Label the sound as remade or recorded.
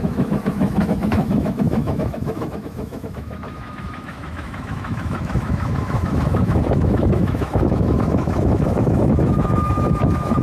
remade